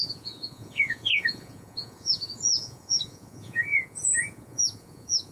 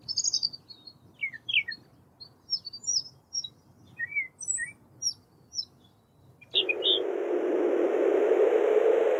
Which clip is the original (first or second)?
second